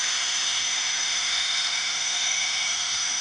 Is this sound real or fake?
fake